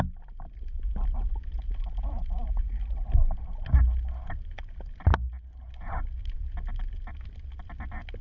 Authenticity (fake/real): real